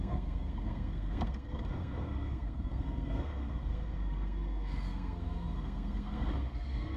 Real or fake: fake